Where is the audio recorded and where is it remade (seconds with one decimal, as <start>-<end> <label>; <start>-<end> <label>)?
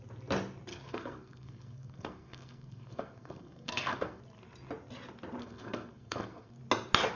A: 0.0-0.7 recorded; 0.7-4.2 remade; 4.2-5.4 recorded; 5.4-6.6 remade; 6.6-7.2 recorded